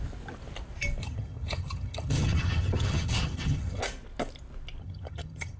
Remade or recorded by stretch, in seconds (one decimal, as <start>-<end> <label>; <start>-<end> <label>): 0.0-1.0 recorded; 1.0-3.8 remade; 3.8-4.8 recorded; 4.8-5.6 remade